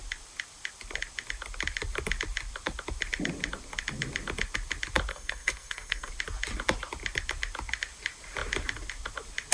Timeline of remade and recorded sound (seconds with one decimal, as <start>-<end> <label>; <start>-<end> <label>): 0.0-5.1 recorded; 5.1-6.1 remade; 6.1-9.5 recorded